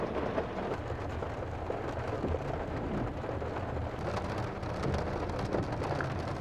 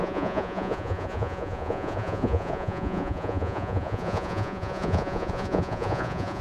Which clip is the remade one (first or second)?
second